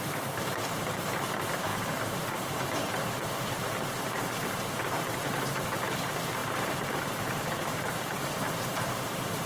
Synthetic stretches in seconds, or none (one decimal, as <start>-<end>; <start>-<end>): 0.0-9.5

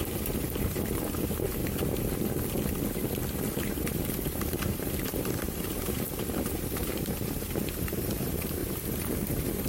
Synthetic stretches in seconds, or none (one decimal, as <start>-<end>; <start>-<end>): 0.0-1.6; 3.6-9.7

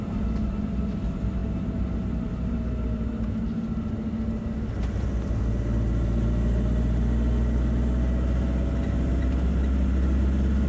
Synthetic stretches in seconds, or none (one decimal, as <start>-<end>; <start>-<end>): none

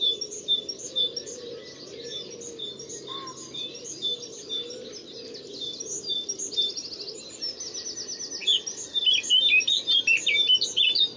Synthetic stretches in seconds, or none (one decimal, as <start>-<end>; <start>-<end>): none

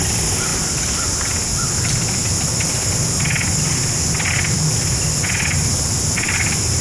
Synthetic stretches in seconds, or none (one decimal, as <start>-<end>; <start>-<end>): none

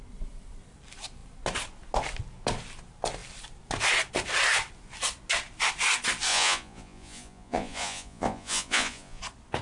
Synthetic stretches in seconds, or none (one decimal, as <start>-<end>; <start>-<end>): 6.3-9.2

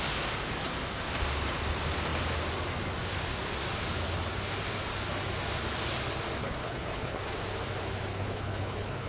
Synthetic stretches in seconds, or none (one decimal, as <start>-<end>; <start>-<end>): 6.4-7.3; 8.1-9.1